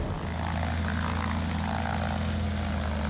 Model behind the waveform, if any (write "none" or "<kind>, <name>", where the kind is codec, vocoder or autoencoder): none